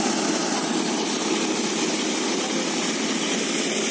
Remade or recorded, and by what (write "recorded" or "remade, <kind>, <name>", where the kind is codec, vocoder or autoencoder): recorded